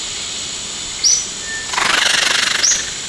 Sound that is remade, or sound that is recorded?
recorded